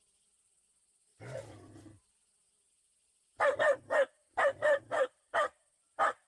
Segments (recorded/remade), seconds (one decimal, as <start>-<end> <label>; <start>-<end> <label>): 0.0-6.3 recorded